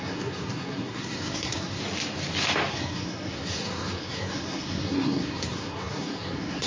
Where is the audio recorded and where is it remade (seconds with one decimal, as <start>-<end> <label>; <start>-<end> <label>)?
0.0-1.8 remade; 1.8-2.7 recorded; 2.7-6.7 remade